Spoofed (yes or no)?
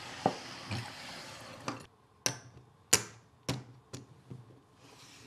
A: no